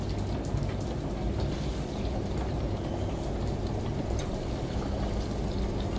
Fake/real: real